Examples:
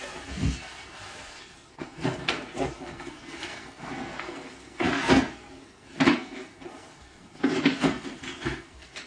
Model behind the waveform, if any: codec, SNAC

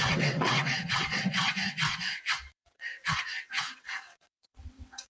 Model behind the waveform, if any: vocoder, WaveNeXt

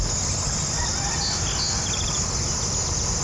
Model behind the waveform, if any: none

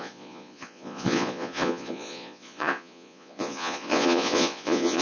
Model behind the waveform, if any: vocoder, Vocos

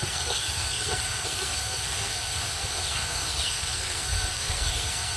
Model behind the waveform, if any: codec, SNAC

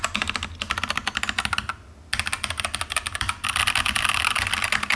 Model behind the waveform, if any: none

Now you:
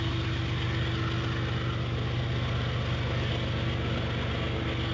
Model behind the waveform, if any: none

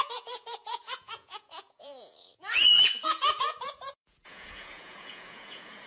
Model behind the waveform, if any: vocoder, Vocos